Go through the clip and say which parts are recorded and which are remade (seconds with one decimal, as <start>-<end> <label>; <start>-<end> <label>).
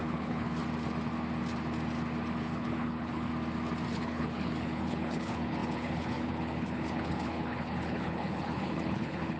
0.0-0.6 remade; 0.6-2.4 recorded; 2.4-3.3 remade; 3.3-3.9 recorded; 3.9-9.4 remade